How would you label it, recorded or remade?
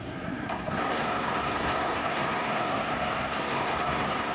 remade